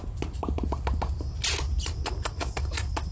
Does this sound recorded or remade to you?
recorded